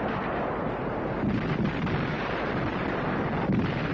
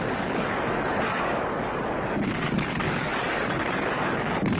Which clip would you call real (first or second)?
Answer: first